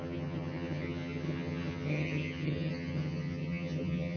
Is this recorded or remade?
remade